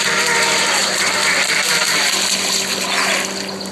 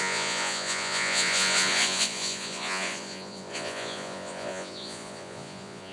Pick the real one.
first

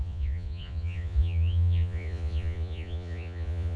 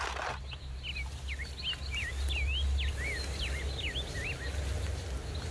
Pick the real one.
second